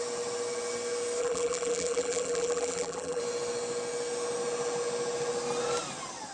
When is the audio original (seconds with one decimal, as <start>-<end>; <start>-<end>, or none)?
0.0-1.2; 3.2-6.3